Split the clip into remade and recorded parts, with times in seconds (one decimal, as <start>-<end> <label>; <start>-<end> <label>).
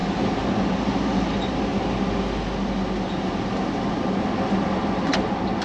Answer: 0.0-0.5 remade; 0.5-5.6 recorded